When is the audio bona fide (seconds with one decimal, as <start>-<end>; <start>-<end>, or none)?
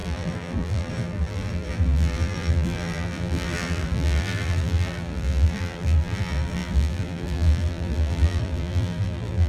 none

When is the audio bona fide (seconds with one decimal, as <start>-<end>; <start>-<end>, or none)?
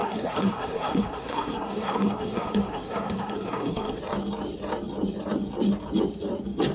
4.0-6.7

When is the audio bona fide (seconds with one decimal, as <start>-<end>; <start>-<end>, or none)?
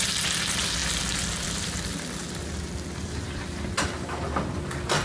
0.0-0.8; 3.8-5.0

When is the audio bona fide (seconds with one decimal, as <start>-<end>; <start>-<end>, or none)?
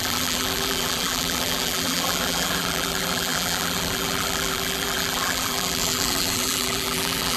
none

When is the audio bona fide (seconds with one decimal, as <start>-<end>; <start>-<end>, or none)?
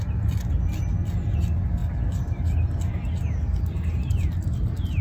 0.0-5.0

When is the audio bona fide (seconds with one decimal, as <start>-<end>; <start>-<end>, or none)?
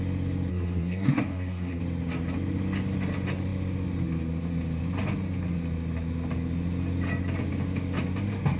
0.0-0.5; 1.8-8.6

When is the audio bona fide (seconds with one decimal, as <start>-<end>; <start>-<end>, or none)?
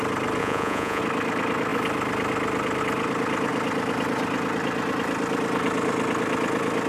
0.0-0.4; 1.0-6.9